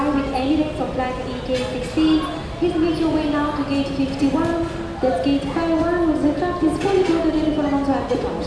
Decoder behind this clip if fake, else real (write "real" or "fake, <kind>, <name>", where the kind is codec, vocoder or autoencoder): real